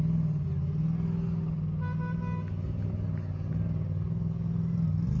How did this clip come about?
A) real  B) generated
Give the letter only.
A